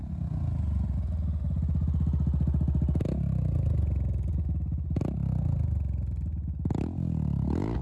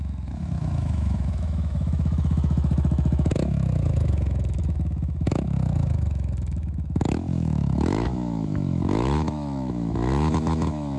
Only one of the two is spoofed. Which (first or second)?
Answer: second